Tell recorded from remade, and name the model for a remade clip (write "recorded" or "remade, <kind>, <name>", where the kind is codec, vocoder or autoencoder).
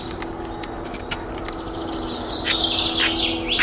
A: recorded